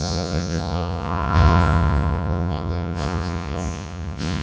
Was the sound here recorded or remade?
remade